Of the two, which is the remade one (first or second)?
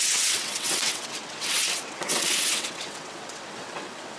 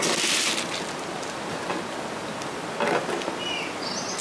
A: first